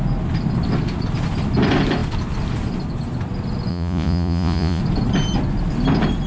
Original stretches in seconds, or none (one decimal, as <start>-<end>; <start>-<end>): 0.0-3.7; 4.8-6.3